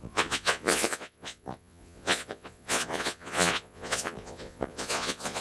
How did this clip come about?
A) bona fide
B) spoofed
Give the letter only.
B